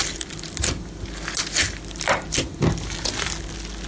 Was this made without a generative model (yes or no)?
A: yes